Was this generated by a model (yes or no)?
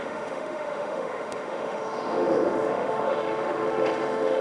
yes